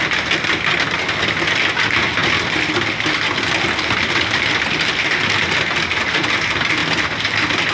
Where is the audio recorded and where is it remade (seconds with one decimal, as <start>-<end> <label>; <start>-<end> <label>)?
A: 0.0-7.7 recorded